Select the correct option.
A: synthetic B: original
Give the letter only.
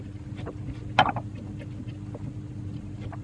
B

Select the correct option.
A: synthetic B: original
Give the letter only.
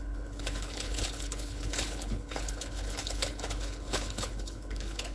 A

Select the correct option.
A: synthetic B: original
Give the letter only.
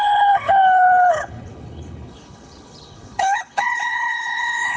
A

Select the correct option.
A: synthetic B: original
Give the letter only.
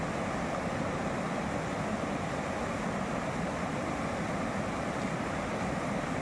B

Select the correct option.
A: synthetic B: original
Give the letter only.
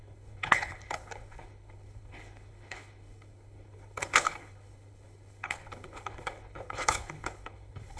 A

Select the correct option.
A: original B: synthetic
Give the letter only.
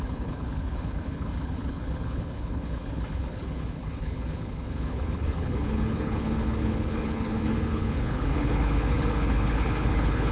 B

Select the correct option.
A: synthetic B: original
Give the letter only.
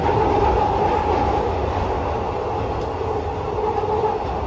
B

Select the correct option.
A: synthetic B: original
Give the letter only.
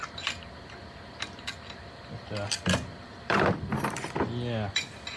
B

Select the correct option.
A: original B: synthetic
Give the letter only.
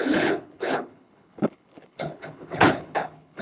B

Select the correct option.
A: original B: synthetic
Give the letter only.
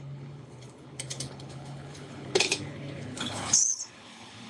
B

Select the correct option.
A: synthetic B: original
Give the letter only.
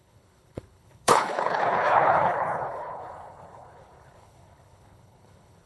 A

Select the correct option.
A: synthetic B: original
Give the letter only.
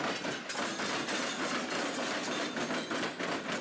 B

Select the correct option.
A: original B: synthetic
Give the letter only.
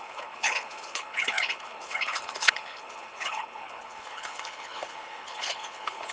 B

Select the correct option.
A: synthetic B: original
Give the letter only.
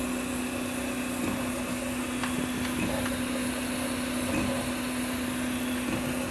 B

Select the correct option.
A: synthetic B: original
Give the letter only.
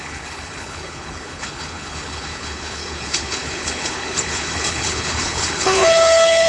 A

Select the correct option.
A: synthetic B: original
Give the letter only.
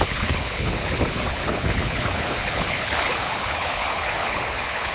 A